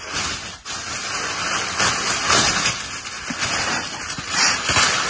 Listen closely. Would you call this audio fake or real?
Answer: real